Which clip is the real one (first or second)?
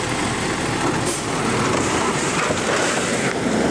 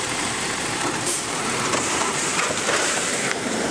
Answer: first